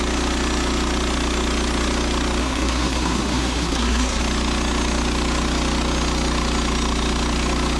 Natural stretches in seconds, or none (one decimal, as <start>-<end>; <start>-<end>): 0.0-2.4; 4.2-7.8